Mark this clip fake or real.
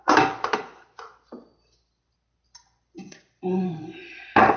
real